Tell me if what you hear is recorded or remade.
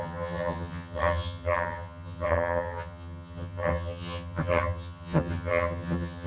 remade